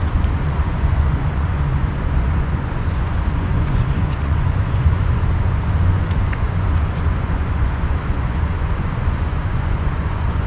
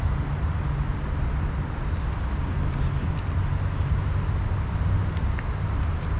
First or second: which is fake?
first